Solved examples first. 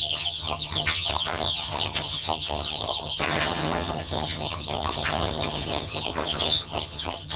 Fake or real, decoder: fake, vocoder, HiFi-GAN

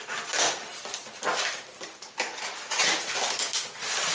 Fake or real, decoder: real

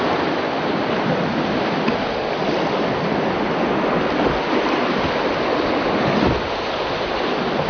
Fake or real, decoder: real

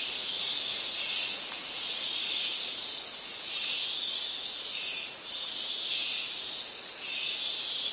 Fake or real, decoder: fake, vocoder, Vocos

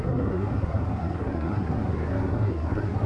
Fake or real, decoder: fake, codec, SNAC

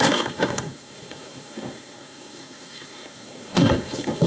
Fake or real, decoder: fake, codec, SNAC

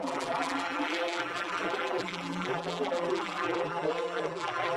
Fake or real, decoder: fake, vocoder, BigVGAN v2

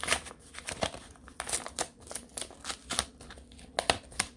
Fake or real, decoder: real